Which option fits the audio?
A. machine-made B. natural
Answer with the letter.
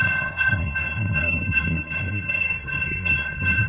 A